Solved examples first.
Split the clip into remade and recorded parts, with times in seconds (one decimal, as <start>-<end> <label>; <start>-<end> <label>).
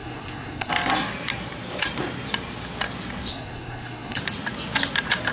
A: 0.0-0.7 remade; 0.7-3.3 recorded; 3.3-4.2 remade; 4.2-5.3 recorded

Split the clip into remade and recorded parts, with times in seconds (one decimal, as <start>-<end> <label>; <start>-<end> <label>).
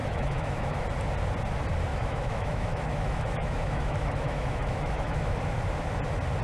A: 0.0-0.8 remade; 0.8-1.9 recorded; 1.9-5.4 remade; 5.4-6.4 recorded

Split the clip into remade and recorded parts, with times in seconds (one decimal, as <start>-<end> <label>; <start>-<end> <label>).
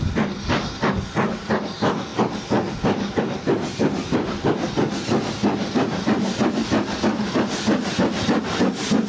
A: 0.0-9.1 recorded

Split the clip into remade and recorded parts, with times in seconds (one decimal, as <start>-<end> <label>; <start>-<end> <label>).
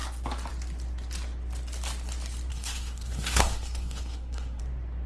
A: 0.0-2.5 recorded; 2.5-4.6 remade; 4.6-5.1 recorded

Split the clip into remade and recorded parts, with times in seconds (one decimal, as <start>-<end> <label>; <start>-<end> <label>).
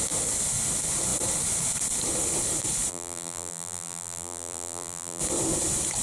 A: 0.0-2.9 recorded; 2.9-5.2 remade; 5.2-6.0 recorded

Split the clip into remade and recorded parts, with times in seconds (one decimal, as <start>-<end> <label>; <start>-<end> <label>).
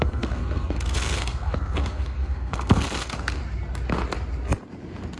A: 0.0-3.4 remade; 3.4-5.2 recorded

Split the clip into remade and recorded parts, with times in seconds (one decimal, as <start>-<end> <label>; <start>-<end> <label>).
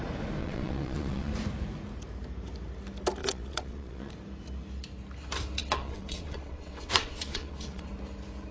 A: 0.0-0.4 recorded; 0.4-1.3 remade; 1.3-3.2 recorded; 3.2-4.1 remade; 4.1-5.6 recorded; 5.6-7.9 remade; 7.9-8.5 recorded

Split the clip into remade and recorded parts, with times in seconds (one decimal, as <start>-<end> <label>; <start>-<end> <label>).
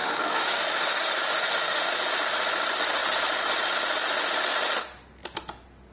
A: 0.0-1.9 remade; 1.9-5.9 recorded